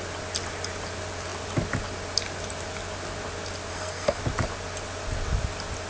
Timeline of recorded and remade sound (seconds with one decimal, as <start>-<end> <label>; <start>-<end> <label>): 0.0-3.7 recorded; 3.7-4.2 remade; 4.2-5.9 recorded

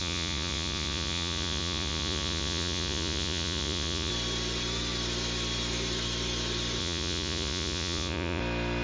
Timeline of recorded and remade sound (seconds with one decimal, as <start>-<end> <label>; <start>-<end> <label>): 0.0-4.1 remade; 4.1-6.8 recorded; 6.8-8.4 remade; 8.4-8.8 recorded